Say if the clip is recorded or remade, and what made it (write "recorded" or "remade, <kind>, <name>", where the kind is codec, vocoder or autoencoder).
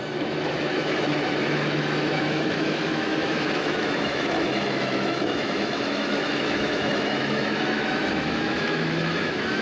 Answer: remade, autoencoder, DAC-VAE